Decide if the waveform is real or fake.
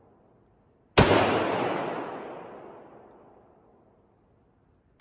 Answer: real